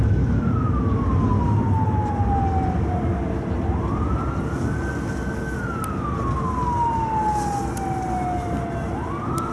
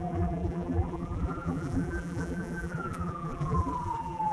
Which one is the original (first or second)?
first